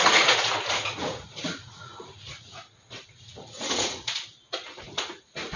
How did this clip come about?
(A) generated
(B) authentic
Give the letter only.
A